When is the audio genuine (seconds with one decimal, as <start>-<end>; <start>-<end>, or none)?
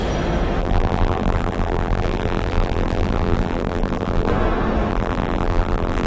0.0-0.6; 4.3-4.9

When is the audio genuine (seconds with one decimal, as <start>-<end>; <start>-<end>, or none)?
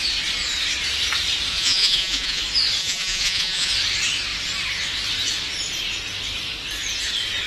0.0-1.5; 2.4-2.8; 3.7-7.5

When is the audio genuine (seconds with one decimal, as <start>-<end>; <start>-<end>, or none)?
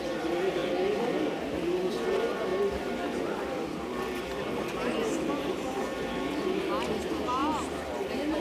0.0-8.4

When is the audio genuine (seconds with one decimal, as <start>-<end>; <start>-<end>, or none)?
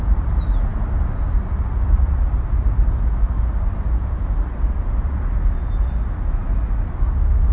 0.0-7.5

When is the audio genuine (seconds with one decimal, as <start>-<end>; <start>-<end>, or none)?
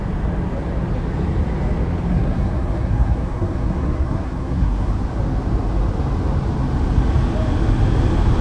0.0-2.1; 4.9-8.4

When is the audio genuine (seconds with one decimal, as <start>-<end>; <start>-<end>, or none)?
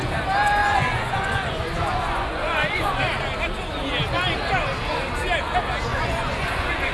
0.0-0.6; 3.0-5.9